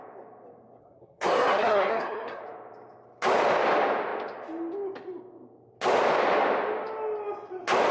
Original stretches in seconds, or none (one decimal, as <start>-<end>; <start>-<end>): 0.0-0.8; 2.4-7.9